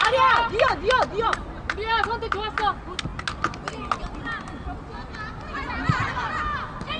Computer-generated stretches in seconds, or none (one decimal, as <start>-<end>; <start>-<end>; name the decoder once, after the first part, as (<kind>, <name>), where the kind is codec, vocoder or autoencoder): none